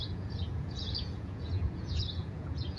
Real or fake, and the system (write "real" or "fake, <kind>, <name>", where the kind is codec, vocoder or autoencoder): fake, vocoder, Vocos